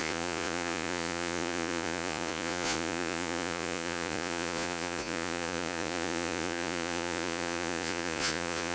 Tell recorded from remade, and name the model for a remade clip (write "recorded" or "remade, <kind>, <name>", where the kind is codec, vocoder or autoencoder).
remade, vocoder, Vocos